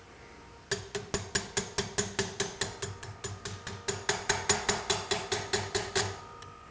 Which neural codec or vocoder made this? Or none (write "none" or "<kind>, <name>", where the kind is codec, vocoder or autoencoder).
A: none